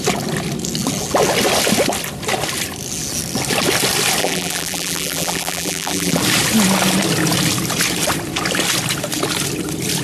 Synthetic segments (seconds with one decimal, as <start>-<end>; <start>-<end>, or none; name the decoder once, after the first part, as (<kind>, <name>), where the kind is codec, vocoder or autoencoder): 4.2-6.2 (vocoder, BigVGAN v2)